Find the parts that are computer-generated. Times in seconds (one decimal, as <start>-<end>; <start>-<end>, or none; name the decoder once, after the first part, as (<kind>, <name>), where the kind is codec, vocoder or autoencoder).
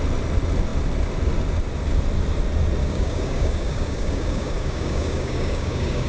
2.8-6.1 (codec, DAC)